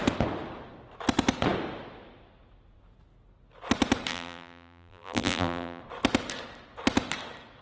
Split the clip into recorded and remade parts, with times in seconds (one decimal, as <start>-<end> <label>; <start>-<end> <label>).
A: 0.0-4.1 recorded; 4.1-5.8 remade; 5.8-7.6 recorded